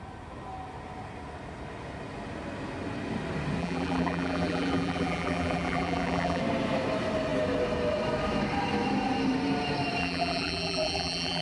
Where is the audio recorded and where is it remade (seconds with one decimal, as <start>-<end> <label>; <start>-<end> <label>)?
0.0-3.6 recorded; 3.6-6.4 remade; 6.4-10.0 recorded; 10.0-11.4 remade